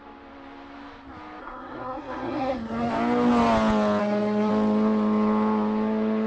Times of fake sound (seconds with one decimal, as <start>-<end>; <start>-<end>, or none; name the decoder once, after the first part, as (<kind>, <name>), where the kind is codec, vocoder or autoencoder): 1.4-2.9 (codec, SNAC); 4.0-4.5